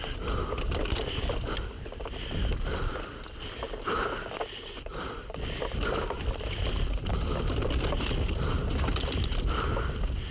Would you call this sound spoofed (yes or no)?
no